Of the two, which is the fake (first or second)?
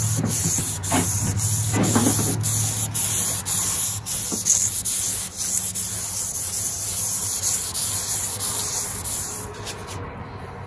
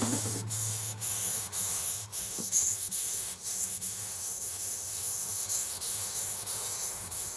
second